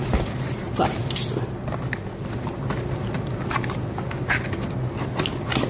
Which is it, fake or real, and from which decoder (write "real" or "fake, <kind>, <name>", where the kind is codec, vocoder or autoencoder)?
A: real